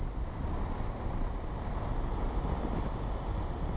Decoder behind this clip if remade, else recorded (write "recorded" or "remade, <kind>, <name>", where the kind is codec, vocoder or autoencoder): recorded